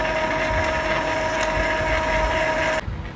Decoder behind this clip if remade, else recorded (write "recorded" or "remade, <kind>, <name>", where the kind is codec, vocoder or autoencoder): recorded